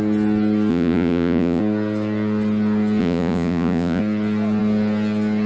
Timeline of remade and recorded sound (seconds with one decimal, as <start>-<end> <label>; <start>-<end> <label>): 0.0-0.7 recorded; 0.7-1.6 remade; 1.6-3.0 recorded; 3.0-4.0 remade; 4.0-5.5 recorded